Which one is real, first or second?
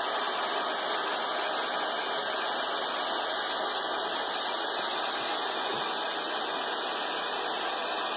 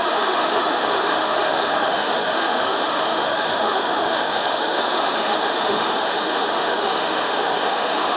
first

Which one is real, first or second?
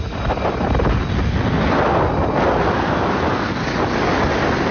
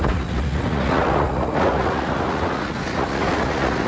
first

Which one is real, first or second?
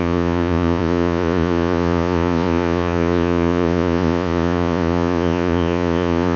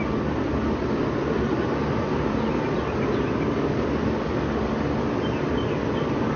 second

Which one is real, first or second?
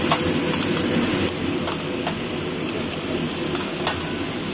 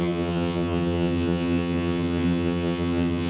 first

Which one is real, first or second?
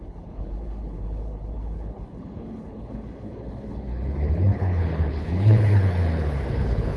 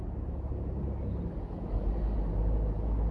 second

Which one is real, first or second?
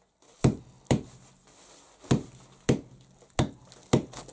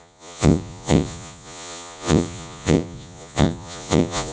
first